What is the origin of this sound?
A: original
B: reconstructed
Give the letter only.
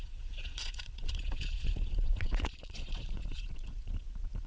B